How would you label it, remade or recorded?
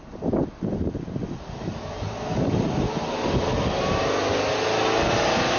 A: recorded